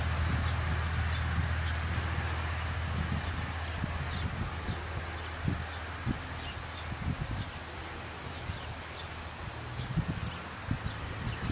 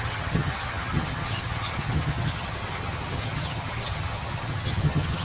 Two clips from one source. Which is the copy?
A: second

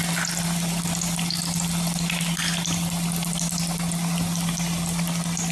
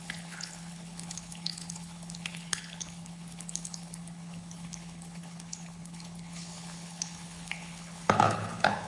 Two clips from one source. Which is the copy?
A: second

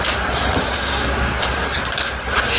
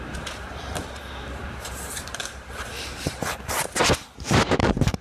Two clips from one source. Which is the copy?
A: second